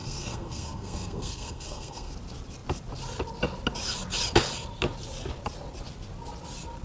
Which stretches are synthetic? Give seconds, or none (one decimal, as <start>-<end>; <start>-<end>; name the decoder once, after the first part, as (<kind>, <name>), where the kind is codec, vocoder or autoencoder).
0.0-2.1 (codec, SNAC)